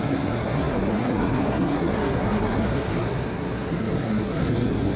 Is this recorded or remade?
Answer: remade